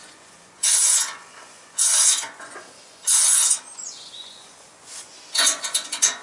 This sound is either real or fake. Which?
fake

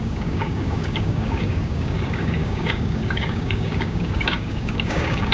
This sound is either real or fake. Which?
fake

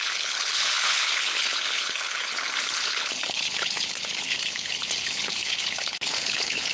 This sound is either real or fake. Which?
fake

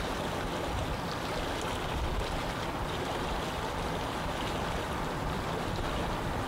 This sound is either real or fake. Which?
real